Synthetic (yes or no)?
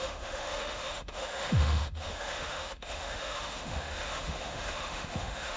yes